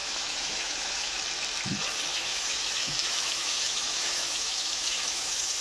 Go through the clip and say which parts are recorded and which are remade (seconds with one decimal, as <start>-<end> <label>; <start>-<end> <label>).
0.0-1.2 remade; 1.2-2.1 recorded; 2.1-5.6 remade